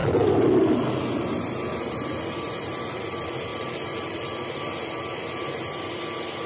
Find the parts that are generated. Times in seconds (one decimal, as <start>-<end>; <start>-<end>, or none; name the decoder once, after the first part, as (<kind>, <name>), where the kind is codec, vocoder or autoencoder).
3.5-4.5 (vocoder, BigVGAN v2)

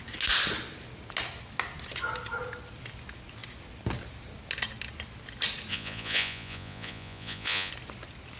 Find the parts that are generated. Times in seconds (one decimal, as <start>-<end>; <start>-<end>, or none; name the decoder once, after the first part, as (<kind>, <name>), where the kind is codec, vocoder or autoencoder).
5.7-7.7 (vocoder, Vocos)

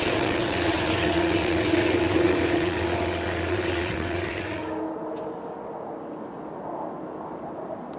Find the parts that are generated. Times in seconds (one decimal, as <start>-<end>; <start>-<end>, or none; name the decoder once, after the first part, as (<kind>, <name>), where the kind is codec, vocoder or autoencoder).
0.0-4.6 (vocoder, WaveNeXt)